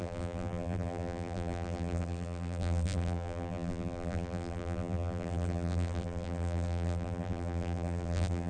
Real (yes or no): no